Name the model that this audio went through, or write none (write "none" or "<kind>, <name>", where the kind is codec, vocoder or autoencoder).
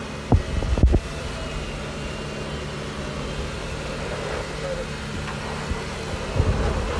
none